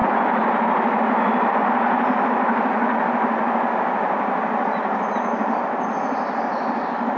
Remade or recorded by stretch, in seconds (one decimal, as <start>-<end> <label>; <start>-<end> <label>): 0.0-0.7 remade; 0.7-7.2 recorded